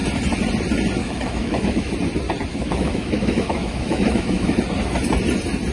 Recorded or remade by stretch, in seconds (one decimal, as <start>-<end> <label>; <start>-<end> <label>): 0.0-1.0 recorded; 1.0-1.9 remade; 1.9-2.5 recorded; 2.5-4.6 remade; 4.6-5.7 recorded